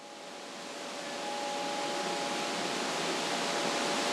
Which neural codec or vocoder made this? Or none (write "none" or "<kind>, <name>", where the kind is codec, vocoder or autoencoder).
none